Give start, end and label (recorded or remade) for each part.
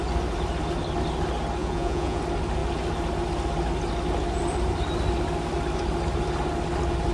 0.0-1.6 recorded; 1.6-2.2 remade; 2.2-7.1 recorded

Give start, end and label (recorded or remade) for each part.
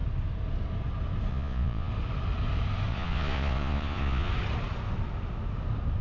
0.0-1.3 recorded; 1.3-1.9 remade; 1.9-2.9 recorded; 2.9-4.3 remade; 4.3-6.0 recorded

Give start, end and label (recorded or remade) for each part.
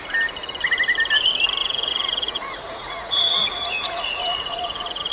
0.0-1.6 recorded; 1.6-5.1 remade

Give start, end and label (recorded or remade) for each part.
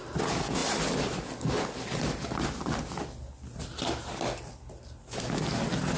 0.0-6.0 recorded